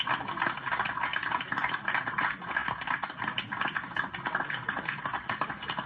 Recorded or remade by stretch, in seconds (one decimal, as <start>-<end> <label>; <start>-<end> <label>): 0.0-5.9 recorded